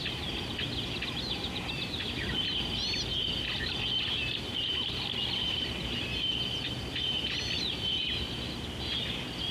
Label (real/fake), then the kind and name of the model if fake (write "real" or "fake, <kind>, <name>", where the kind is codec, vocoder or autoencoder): fake, vocoder, BigVGAN v2